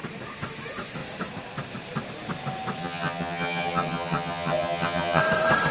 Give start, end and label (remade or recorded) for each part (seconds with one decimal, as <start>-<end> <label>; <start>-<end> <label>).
0.0-2.8 recorded; 2.8-5.2 remade; 5.2-5.7 recorded